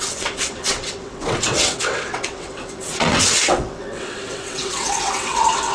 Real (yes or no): no